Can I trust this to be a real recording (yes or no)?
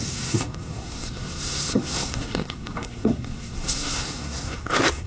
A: no